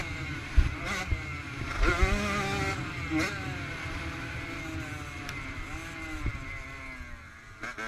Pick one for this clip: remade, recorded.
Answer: recorded